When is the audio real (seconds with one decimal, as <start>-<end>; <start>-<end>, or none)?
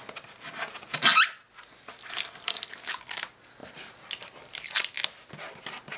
0.0-6.0